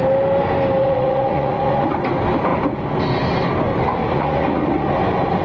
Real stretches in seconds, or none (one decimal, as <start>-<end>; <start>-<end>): 0.0-0.8; 1.9-4.0; 4.9-5.4